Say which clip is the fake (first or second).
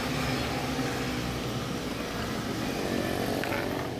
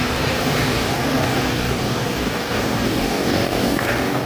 second